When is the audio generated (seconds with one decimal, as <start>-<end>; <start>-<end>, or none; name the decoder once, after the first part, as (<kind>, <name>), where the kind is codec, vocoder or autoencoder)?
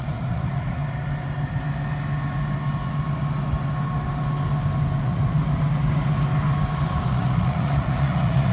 0.0-0.8 (vocoder, Vocos); 5.0-5.4; 7.0-8.5